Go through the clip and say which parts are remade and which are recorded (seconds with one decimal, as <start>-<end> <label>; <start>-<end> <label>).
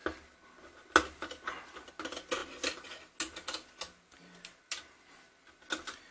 0.0-6.1 recorded